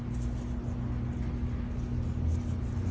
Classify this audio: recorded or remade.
recorded